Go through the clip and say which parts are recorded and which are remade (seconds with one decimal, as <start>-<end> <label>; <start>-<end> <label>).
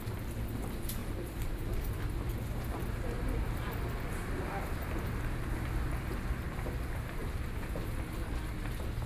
0.0-1.0 recorded; 1.0-2.0 remade; 2.0-9.1 recorded